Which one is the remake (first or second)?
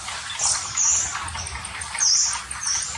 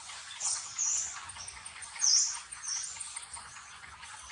second